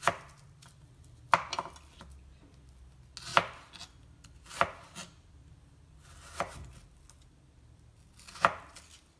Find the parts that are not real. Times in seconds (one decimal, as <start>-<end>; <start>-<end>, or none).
none